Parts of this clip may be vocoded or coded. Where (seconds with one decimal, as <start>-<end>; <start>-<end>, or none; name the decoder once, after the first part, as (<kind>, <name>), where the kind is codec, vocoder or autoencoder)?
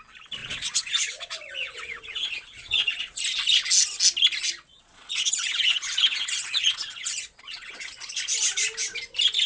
0.4-3.2 (vocoder, Vocos); 4.7-8.1